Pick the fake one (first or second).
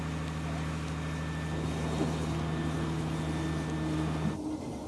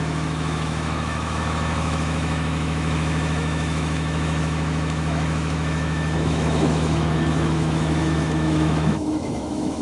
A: second